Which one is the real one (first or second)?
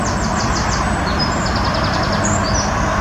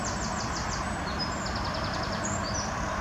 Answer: first